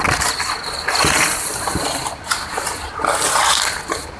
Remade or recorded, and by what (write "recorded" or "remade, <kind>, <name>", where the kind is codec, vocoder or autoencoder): recorded